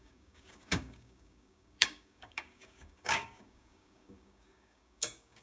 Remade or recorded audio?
remade